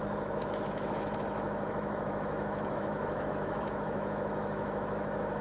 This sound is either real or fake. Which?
fake